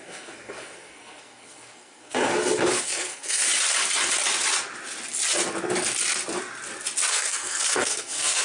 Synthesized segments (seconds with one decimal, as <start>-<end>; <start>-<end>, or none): 0.0-2.3; 2.8-3.4; 7.1-8.4